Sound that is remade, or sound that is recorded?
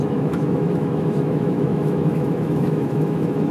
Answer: remade